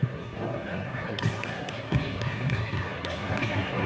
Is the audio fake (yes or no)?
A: yes